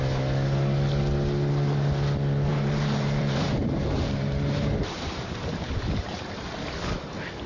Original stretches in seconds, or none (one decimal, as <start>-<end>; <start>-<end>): 0.0-2.5; 6.5-7.5

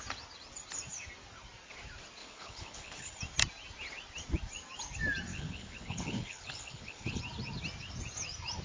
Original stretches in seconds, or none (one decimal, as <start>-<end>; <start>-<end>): 0.0-2.2; 3.1-5.3; 7.2-8.6

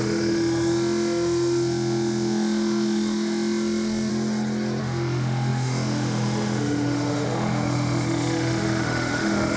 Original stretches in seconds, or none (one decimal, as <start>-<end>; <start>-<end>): 4.1-4.8

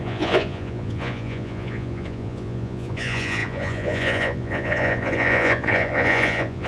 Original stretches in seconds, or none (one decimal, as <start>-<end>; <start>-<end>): none